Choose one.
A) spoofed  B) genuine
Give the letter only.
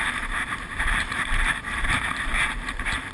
A